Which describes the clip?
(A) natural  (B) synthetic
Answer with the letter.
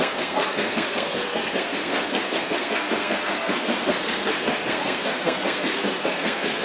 B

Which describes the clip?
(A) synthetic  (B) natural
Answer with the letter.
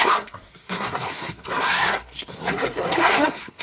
A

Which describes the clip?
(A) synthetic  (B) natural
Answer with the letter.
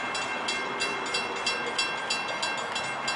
B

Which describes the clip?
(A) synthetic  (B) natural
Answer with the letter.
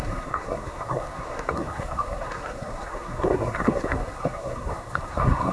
A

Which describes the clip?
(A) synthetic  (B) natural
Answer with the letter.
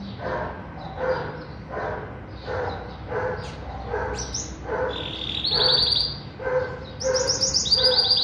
B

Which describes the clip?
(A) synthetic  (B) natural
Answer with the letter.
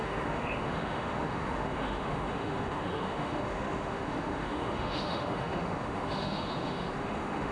A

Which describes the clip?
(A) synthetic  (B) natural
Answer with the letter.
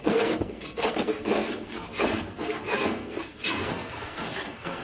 A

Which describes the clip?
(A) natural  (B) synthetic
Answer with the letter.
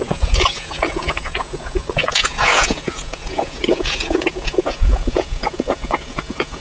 B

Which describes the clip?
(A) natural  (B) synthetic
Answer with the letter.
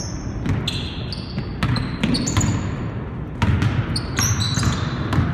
A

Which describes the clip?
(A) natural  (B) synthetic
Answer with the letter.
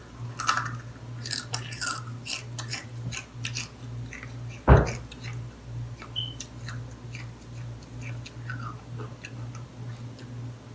A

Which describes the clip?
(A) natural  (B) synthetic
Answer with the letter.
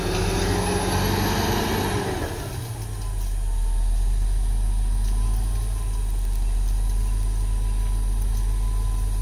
A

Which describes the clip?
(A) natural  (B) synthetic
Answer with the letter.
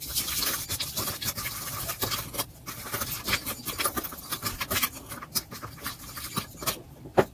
B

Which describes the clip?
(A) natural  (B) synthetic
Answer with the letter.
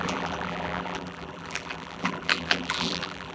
B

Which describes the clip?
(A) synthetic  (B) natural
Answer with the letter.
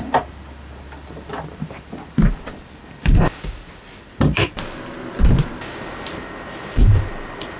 A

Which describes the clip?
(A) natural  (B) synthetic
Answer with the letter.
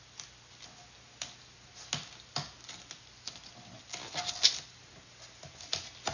A